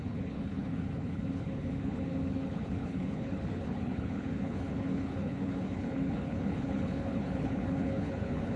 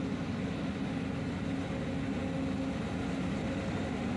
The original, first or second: second